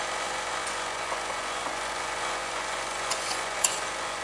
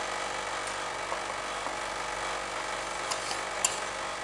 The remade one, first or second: first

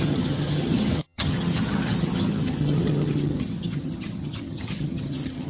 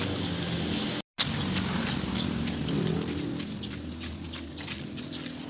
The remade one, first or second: first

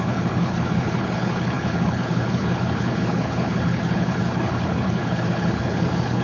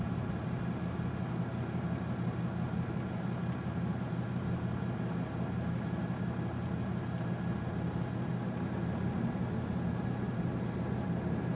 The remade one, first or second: first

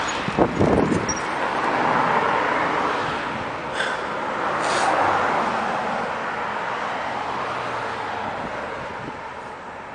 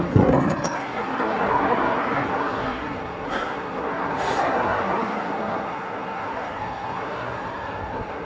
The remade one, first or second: second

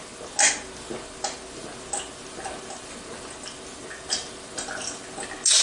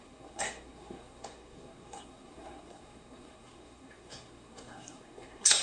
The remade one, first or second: second